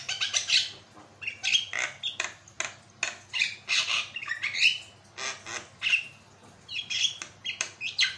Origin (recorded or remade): recorded